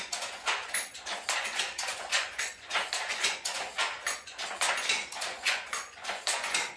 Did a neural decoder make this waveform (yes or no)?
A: yes